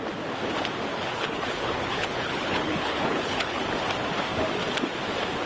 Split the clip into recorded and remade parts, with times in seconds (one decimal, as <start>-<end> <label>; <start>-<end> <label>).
0.0-0.9 recorded; 0.9-3.6 remade; 3.6-5.5 recorded